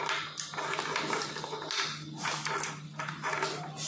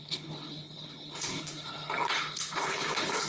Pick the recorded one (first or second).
first